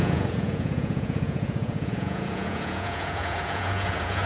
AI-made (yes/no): yes